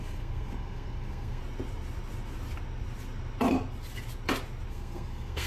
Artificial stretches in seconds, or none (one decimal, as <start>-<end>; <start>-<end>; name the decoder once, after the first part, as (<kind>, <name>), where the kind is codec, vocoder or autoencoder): 0.0-1.4 (codec, SNAC); 4.7-5.5